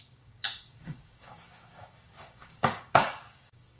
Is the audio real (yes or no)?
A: no